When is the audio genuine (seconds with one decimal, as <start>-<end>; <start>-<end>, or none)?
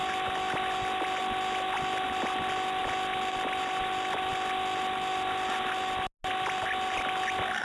0.0-7.6